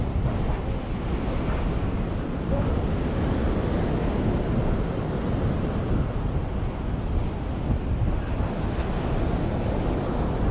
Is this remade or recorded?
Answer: recorded